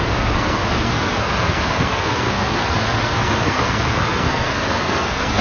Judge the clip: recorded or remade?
remade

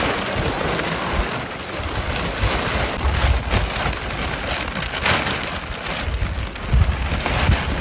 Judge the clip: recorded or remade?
recorded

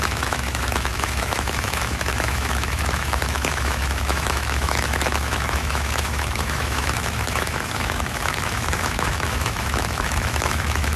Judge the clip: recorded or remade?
remade